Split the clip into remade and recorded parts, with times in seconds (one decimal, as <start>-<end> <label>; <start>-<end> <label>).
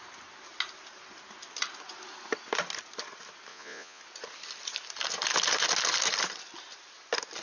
0.0-3.5 recorded; 3.5-4.0 remade; 4.0-7.4 recorded